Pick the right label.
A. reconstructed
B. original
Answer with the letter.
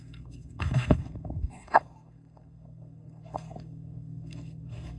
A